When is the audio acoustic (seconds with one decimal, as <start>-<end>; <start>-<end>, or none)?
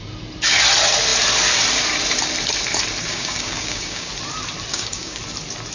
0.0-3.1; 4.1-4.7; 5.2-5.7